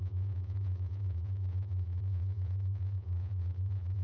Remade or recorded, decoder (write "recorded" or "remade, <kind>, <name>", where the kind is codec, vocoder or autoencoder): remade, vocoder, Vocos